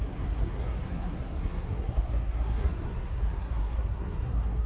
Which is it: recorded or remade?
remade